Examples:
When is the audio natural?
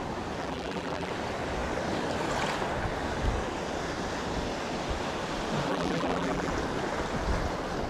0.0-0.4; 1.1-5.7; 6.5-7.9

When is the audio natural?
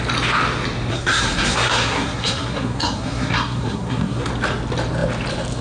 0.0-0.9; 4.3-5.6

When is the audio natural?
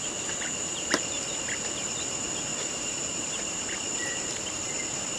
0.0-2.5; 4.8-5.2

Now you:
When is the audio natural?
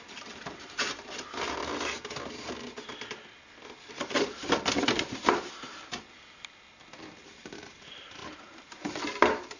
1.6-3.9; 5.9-7.2